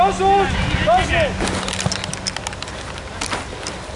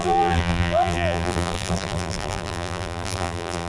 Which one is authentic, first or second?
first